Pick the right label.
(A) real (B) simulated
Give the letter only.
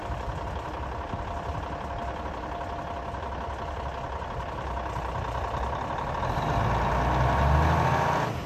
A